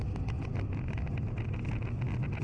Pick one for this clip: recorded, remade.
recorded